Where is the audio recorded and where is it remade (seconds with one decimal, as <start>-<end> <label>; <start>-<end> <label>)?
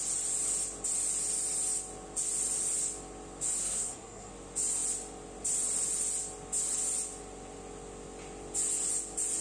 0.0-3.6 recorded; 3.6-4.3 remade; 4.3-9.4 recorded